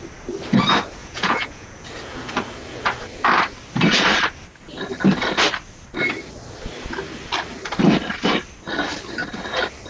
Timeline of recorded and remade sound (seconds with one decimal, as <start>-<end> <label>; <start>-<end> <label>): 0.0-1.0 recorded; 1.0-1.9 remade; 1.9-9.9 recorded